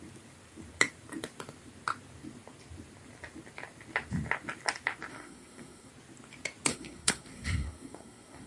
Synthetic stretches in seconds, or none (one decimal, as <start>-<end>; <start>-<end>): 5.1-5.9; 6.7-8.5